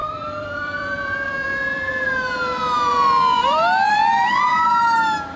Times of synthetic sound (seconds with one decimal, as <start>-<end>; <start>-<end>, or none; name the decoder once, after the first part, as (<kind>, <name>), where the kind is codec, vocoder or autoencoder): 0.0-1.9 (vocoder, BigVGAN v2); 2.9-4.4